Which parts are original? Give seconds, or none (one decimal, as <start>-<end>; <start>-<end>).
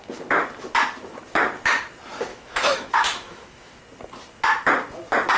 0.0-2.3; 3.8-5.4